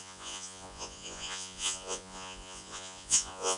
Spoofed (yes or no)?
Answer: yes